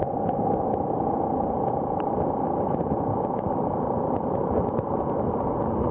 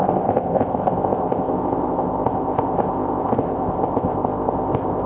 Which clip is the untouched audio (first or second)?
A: first